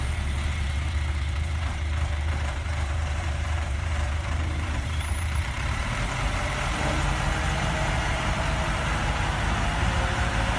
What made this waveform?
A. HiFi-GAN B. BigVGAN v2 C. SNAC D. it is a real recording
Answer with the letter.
B